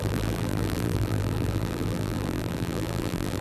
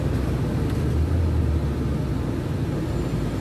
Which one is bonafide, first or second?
second